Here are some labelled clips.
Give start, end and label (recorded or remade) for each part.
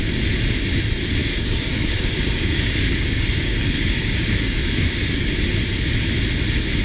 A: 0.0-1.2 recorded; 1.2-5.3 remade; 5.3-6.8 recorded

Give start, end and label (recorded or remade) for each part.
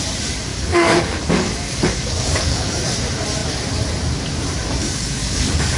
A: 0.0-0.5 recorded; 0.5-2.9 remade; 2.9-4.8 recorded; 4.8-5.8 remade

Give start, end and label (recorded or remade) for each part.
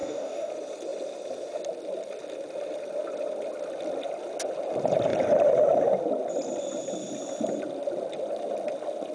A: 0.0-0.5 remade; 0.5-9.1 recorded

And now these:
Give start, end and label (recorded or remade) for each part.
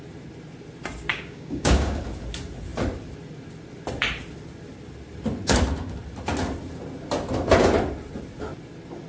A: 0.0-1.1 recorded; 1.1-2.0 remade; 2.0-9.1 recorded